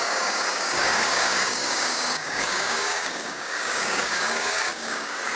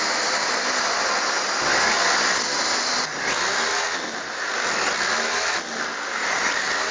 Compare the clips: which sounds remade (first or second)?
first